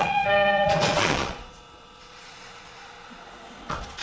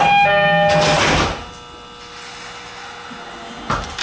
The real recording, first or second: second